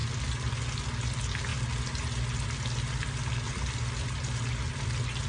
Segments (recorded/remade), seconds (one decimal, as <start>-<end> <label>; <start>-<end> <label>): 0.0-5.3 recorded

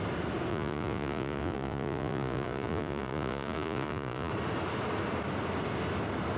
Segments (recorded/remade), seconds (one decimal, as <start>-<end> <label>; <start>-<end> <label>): 0.0-0.5 recorded; 0.5-4.3 remade; 4.3-6.4 recorded